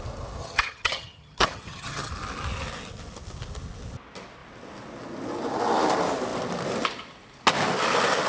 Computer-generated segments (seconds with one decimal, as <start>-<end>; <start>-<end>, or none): 0.4-2.1